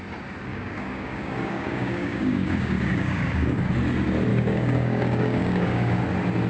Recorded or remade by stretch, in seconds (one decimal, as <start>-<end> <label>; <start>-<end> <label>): 0.0-0.5 recorded; 0.5-3.7 remade; 3.7-4.3 recorded; 4.3-6.0 remade; 6.0-6.5 recorded